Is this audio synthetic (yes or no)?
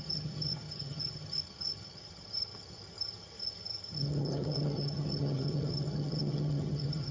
yes